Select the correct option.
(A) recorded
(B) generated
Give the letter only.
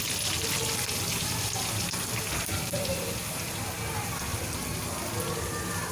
A